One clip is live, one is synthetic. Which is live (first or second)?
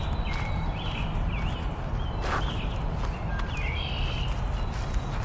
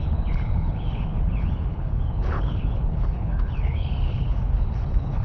first